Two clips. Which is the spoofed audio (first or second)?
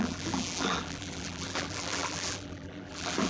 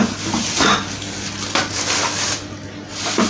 first